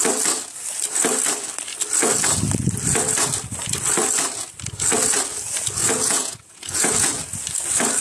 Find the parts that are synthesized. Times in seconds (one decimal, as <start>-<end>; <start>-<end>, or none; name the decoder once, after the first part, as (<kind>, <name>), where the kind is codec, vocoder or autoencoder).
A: 5.8-7.2 (vocoder, Vocos)